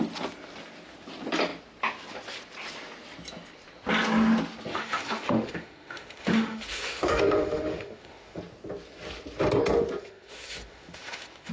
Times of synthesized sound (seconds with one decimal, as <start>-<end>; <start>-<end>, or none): 4.7-8.4; 10.0-11.5